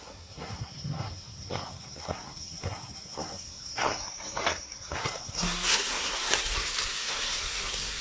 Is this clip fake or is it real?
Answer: fake